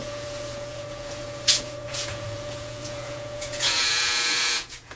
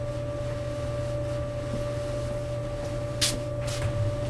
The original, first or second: second